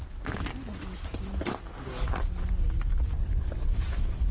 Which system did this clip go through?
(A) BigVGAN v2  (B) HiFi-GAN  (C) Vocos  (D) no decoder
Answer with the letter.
D